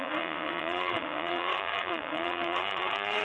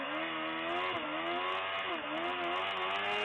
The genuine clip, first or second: second